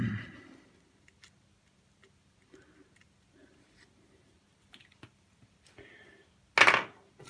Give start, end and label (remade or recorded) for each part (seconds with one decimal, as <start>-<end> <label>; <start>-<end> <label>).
0.0-7.3 recorded